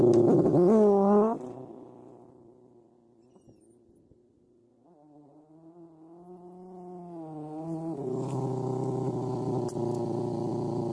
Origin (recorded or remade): recorded